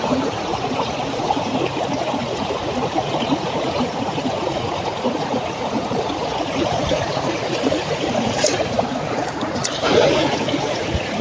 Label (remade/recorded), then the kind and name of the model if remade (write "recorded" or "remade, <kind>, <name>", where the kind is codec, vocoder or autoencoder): remade, vocoder, Vocos